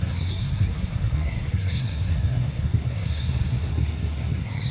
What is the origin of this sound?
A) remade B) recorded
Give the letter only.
A